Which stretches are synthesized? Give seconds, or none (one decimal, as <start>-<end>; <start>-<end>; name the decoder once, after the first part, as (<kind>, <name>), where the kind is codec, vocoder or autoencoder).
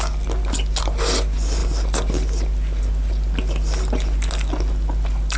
none